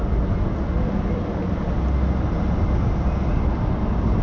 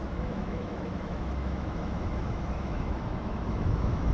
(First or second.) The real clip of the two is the first